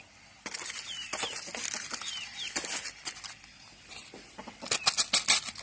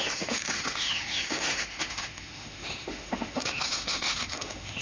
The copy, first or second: second